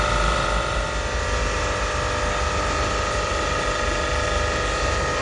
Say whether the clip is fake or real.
real